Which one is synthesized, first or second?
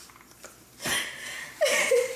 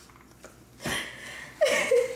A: first